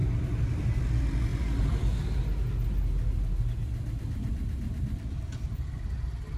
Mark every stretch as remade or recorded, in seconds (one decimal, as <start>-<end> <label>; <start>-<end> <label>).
0.0-6.4 recorded